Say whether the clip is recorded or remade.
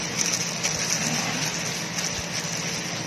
recorded